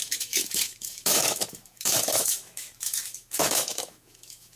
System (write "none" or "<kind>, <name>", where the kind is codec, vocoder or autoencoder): autoencoder, DAC-VAE